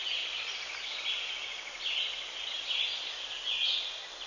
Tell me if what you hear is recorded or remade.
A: recorded